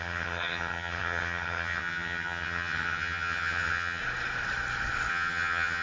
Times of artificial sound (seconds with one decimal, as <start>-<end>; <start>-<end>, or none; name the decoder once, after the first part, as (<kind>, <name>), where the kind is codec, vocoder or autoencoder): 0.0-4.0 (vocoder, HiFi-GAN); 5.1-5.8